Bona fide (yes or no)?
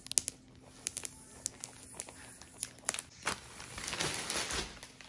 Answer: yes